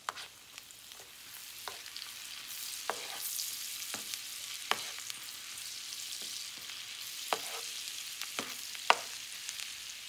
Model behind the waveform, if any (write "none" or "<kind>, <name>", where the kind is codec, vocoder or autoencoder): none